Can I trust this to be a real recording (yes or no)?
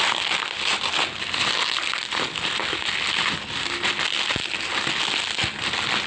yes